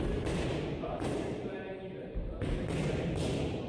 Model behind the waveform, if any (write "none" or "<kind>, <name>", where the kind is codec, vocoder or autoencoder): none